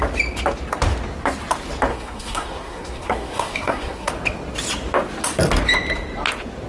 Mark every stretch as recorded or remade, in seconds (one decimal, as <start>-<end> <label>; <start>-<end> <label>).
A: 0.0-1.9 recorded; 1.9-4.1 remade; 4.1-6.7 recorded